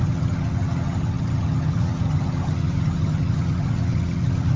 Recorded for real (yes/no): no